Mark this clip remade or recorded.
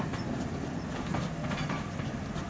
recorded